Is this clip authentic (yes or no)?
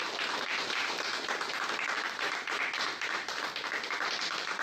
no